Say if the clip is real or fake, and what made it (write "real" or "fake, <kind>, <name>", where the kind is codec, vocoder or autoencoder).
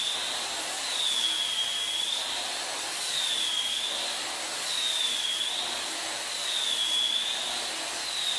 real